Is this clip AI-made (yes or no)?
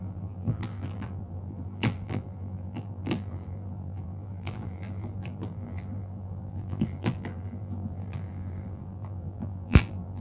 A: yes